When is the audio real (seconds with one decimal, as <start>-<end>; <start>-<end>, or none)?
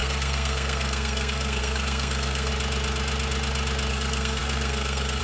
2.5-3.9